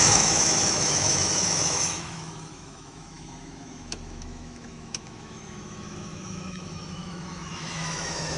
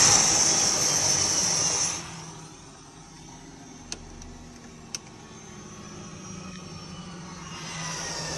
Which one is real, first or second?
second